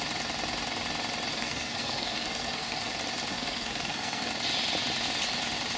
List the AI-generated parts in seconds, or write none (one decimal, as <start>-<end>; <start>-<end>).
1.3-2.9; 3.3-4.3